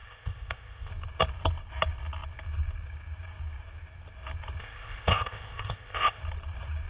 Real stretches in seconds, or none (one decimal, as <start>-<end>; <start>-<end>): 0.9-4.6; 6.2-6.9